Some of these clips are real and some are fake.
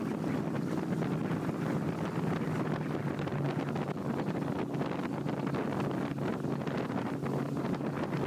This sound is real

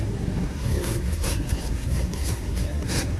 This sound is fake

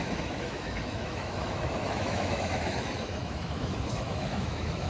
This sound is fake